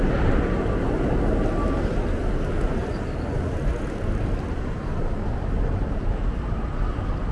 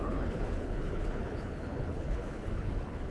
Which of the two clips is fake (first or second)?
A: second